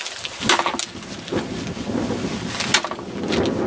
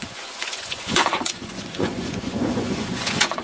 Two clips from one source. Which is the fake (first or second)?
second